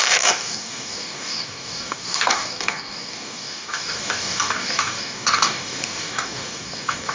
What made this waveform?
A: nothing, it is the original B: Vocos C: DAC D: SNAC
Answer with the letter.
C